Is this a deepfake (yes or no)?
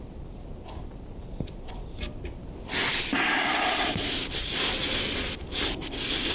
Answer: no